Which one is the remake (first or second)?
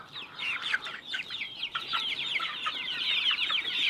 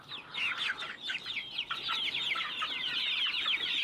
first